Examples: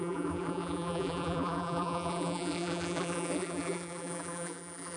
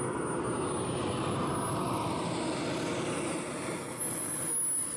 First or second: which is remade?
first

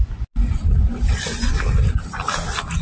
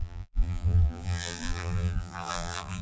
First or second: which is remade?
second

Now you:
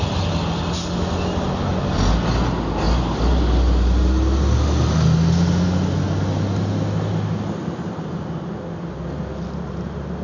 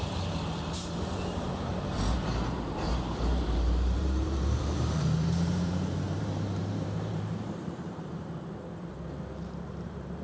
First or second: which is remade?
second